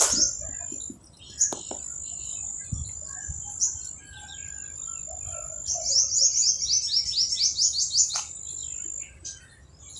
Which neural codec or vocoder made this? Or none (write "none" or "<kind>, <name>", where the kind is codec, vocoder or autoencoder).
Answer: none